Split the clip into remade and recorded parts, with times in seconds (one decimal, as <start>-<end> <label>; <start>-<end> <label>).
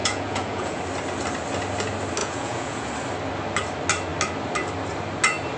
0.0-0.8 remade; 0.8-2.2 recorded; 2.2-2.9 remade; 2.9-5.6 recorded